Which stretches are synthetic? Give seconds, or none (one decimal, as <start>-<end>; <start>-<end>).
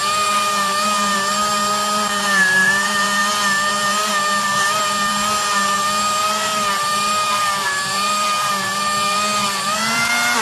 0.0-3.2; 3.7-10.4